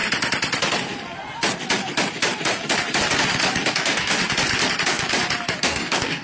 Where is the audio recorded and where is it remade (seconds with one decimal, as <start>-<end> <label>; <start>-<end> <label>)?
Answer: 0.0-3.7 recorded; 3.7-4.2 remade; 4.2-5.6 recorded; 5.6-6.2 remade